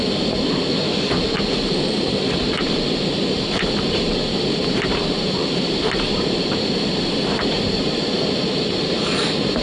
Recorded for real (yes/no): no